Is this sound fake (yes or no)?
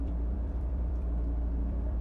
yes